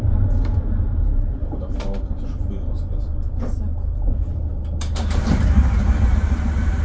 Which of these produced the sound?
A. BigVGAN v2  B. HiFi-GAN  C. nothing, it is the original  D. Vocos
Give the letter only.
A